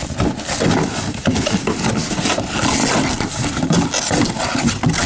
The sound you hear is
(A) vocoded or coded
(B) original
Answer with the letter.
B